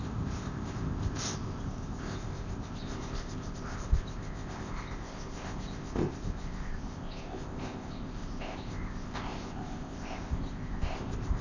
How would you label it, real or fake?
fake